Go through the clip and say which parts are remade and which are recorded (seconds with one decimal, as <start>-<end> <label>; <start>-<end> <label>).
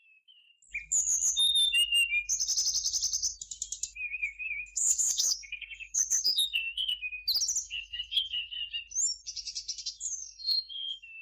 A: 0.0-0.5 remade; 0.5-4.0 recorded; 4.0-7.1 remade; 7.1-7.6 recorded; 7.6-8.6 remade; 8.6-9.8 recorded; 9.8-11.2 remade